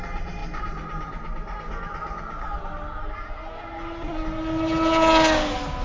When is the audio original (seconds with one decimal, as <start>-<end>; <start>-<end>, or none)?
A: 0.0-5.8